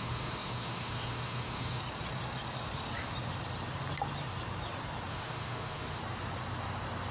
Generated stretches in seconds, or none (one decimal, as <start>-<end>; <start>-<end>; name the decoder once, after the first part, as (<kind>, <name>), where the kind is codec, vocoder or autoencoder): 0.0-1.8 (autoencoder, DAC-VAE); 5.1-6.0